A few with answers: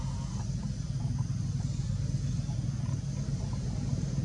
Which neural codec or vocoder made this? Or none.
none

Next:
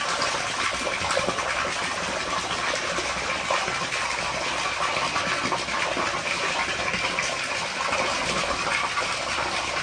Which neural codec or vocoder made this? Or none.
none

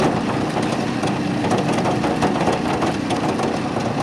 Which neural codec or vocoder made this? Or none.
none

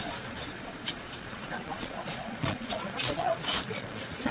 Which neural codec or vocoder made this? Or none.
vocoder, Vocos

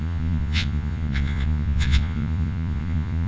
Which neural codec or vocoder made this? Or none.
vocoder, Vocos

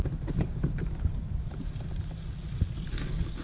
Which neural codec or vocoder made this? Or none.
none